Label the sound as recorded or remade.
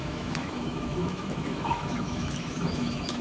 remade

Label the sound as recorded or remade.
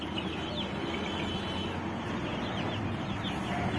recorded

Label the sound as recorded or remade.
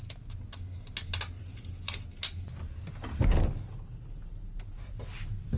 recorded